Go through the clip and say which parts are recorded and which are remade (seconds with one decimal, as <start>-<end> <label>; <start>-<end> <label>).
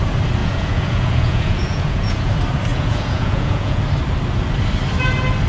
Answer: 0.0-0.4 recorded; 0.4-2.3 remade; 2.3-2.7 recorded; 2.7-3.8 remade; 3.8-5.5 recorded